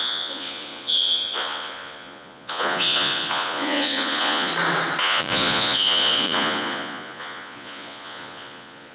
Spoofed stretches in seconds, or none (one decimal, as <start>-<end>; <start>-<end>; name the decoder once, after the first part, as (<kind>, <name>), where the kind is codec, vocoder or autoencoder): 0.0-4.5 (vocoder, Vocos); 5.0-8.9